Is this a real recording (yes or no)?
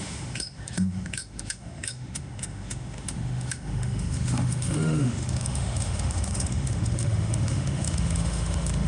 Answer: no